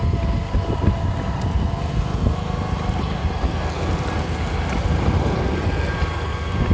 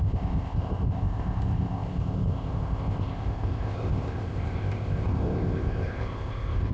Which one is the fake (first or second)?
second